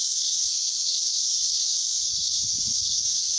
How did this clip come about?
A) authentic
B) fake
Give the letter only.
B